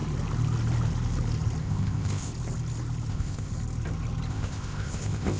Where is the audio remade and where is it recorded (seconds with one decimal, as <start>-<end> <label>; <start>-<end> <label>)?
0.0-1.6 recorded; 1.6-2.3 remade; 2.3-3.1 recorded; 3.1-3.5 remade; 3.5-4.3 recorded; 4.3-5.4 remade